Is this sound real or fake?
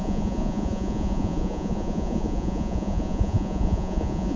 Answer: fake